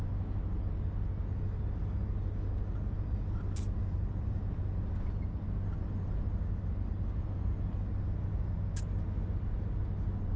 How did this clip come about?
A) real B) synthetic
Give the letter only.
A